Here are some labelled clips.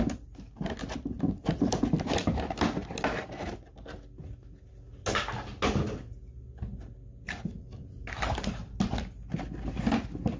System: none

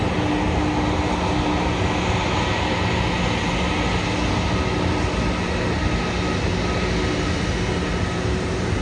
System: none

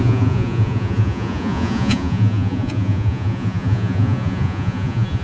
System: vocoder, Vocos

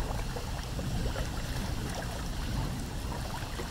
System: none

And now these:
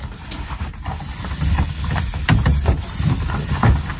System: none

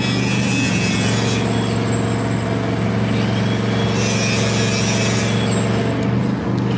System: none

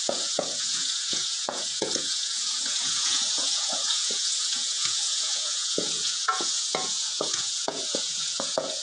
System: vocoder, Vocos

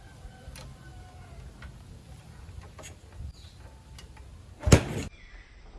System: none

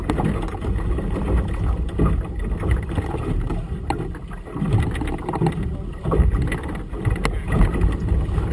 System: none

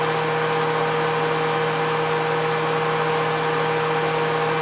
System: none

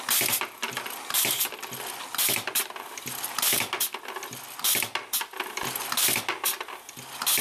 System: none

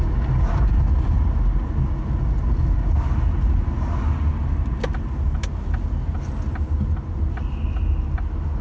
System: none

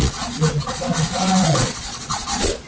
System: vocoder, Vocos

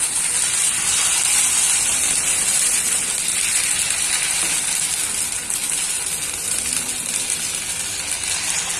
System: none